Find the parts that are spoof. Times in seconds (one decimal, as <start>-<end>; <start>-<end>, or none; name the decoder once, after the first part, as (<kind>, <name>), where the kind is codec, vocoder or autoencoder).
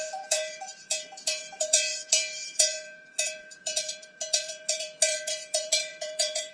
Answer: 0.0-6.5 (vocoder, Vocos)